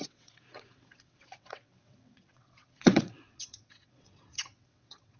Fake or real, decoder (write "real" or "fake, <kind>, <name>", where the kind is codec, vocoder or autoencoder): fake, vocoder, WaveNeXt